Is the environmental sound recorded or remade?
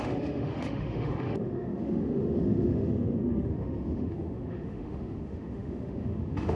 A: remade